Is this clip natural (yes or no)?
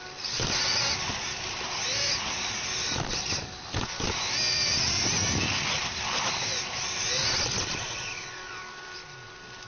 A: yes